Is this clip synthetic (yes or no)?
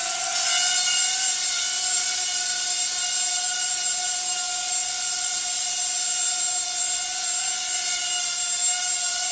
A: no